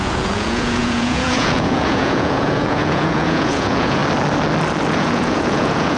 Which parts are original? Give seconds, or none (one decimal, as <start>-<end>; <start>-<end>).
4.0-4.9